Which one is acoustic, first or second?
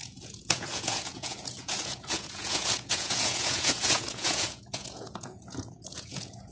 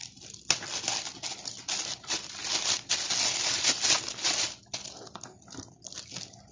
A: second